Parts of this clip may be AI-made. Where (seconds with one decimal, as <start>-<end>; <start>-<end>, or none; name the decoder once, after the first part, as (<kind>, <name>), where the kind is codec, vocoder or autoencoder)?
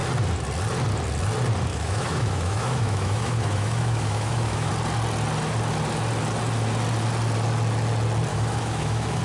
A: 1.7-4.7 (autoencoder, DAC-VAE); 8.3-9.2